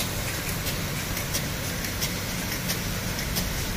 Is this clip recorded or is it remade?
recorded